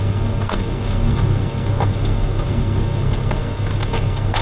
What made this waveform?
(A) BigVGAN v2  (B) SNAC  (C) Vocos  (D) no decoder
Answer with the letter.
B